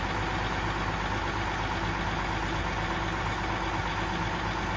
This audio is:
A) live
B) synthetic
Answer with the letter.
A